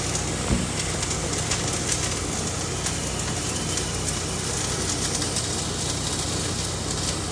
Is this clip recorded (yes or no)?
yes